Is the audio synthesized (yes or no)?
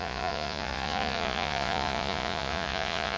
yes